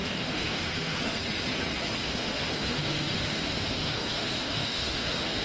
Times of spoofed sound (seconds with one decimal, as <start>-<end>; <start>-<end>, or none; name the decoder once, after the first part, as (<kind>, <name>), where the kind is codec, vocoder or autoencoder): 0.0-1.0 (autoencoder, DAC-VAE); 2.0-5.4